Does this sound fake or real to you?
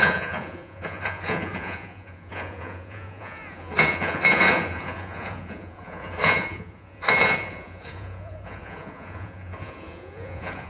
fake